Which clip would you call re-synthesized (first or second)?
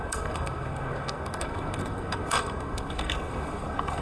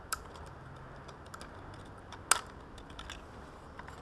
first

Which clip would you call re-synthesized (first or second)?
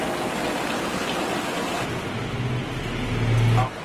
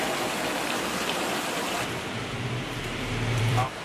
second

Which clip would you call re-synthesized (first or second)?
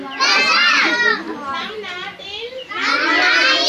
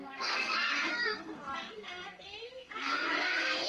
second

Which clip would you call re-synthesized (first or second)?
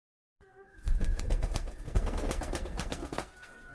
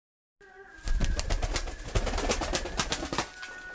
first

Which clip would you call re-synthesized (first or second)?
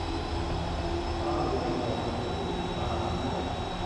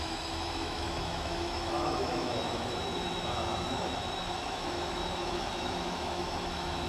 second